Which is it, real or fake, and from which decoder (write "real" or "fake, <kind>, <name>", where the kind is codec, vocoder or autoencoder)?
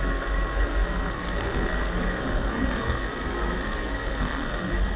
fake, codec, SNAC